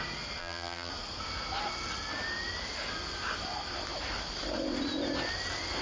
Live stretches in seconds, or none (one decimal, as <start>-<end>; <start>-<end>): 0.0-0.4; 0.9-5.8